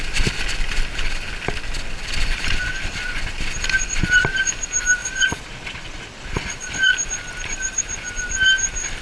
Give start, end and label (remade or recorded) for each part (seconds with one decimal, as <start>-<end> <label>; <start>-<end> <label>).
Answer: 0.0-5.0 recorded; 5.0-6.8 remade; 6.8-9.0 recorded